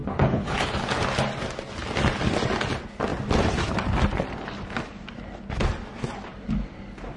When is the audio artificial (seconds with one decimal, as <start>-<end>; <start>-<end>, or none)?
0.0-0.8